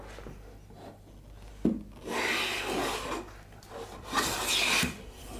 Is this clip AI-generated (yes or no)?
no